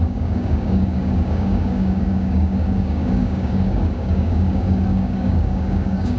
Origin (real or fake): fake